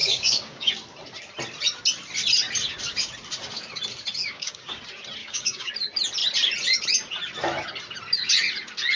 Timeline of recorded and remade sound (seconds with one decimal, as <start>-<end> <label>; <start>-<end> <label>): 0.0-0.7 remade; 0.7-4.2 recorded; 4.2-4.8 remade; 4.8-5.2 recorded; 5.2-5.7 remade; 5.7-9.0 recorded